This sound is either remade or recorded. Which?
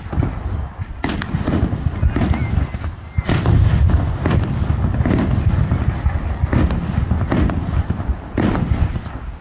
recorded